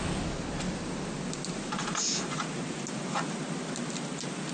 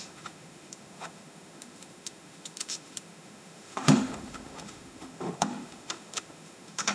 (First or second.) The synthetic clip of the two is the second